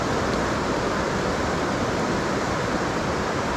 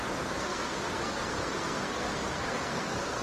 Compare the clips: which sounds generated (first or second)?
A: second